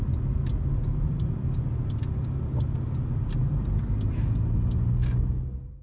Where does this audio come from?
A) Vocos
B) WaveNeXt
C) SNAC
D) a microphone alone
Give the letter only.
D